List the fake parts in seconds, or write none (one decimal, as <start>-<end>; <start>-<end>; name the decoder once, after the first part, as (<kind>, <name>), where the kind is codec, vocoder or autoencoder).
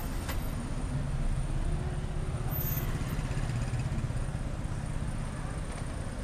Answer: none